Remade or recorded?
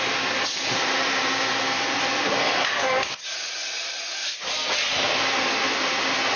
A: recorded